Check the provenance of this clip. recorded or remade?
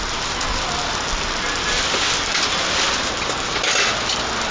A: recorded